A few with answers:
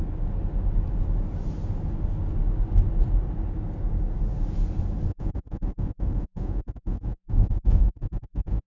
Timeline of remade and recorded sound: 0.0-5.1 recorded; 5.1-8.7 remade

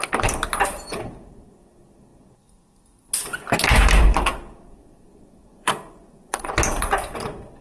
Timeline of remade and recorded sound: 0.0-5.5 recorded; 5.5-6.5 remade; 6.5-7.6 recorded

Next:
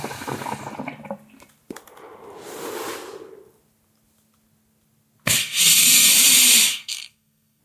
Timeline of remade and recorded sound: 0.0-5.4 recorded; 5.4-6.1 remade; 6.1-6.7 recorded; 6.7-7.6 remade

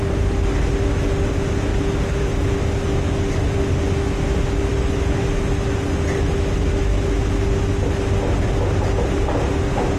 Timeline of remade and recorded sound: 0.0-1.7 recorded; 1.7-2.5 remade; 2.5-10.0 recorded

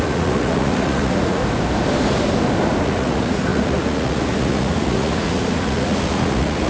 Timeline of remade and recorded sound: 0.0-1.4 remade; 1.4-2.8 recorded; 2.8-6.7 remade

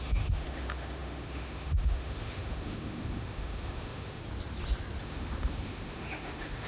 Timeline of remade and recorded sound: 0.0-4.2 remade; 4.2-5.0 recorded; 5.0-6.7 remade

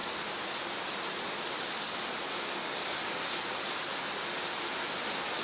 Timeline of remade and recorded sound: 0.0-2.3 recorded; 2.3-3.2 remade; 3.2-5.4 recorded